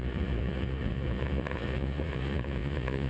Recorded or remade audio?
remade